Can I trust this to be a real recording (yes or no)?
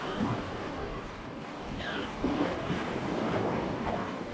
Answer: no